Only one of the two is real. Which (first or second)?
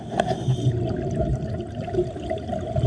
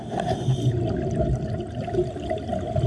second